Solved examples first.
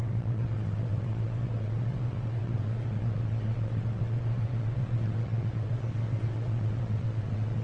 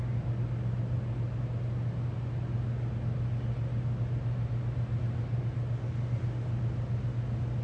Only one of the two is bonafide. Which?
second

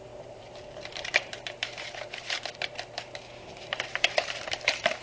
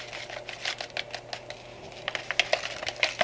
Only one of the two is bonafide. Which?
second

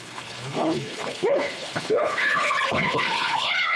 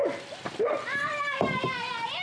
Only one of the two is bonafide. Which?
second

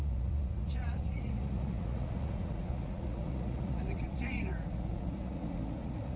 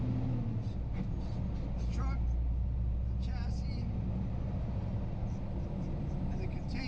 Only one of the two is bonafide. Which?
second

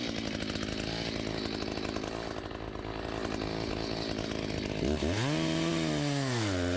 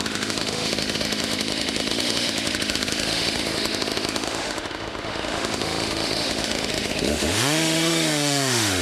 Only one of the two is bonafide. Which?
first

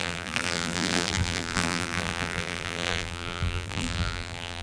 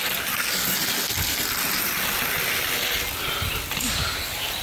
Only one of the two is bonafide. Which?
second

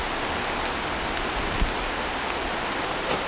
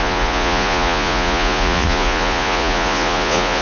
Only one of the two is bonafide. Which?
first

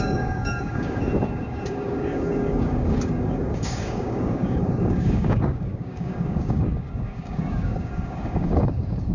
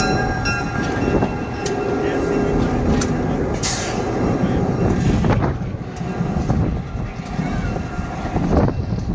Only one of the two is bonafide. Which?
second